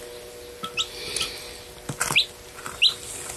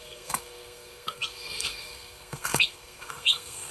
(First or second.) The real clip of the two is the first